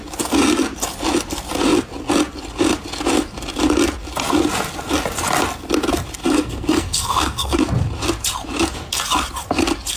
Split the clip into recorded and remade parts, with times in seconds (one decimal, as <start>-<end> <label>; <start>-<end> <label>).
0.0-6.2 recorded; 6.2-7.6 remade; 7.6-10.0 recorded